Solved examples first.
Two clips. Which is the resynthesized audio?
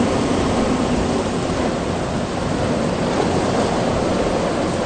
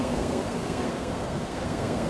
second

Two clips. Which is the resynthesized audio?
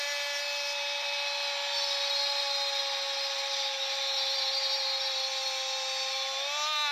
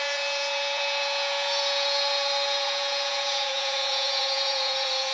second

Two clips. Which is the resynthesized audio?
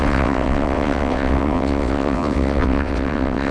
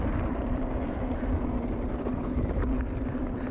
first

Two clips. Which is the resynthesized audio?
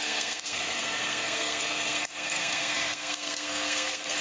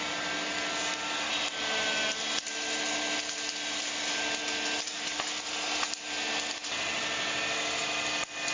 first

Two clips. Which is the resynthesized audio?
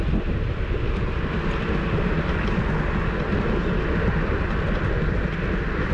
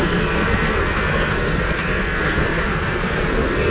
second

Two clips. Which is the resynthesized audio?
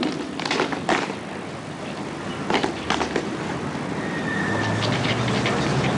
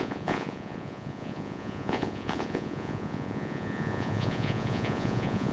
second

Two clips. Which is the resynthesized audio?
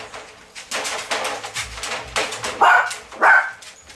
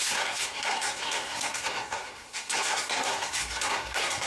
second